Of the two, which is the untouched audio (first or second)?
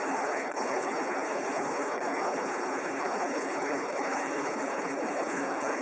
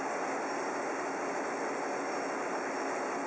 second